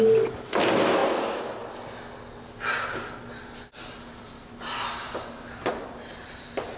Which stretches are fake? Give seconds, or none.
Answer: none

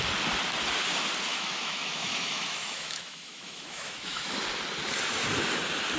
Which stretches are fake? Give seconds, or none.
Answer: 1.3-4.3 (autoencoder, DAC-VAE)

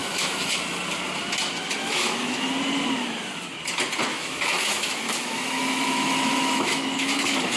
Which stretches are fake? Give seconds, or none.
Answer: 0.0-0.5 (autoencoder, DAC-VAE); 1.8-2.5; 4.1-7.6

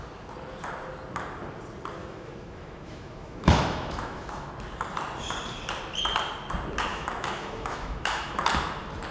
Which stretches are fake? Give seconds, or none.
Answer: 2.0-4.5 (autoencoder, DAC-VAE); 6.9-8.4

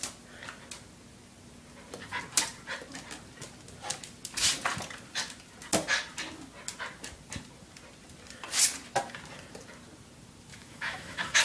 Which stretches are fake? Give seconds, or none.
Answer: 10.5-11.4 (autoencoder, DAC-VAE)

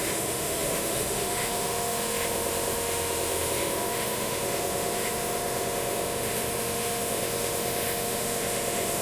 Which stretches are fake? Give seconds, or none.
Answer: 0.0-9.0 (autoencoder, DAC-VAE)

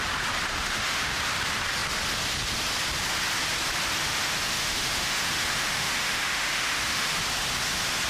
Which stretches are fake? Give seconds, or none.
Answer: 0.5-1.2 (autoencoder, DAC-VAE); 4.0-7.2

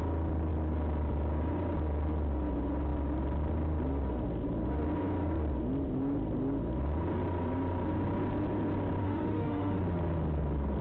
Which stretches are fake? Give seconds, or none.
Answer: 9.0-9.8 (autoencoder, DAC-VAE)